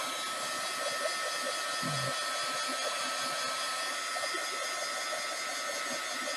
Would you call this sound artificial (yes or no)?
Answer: no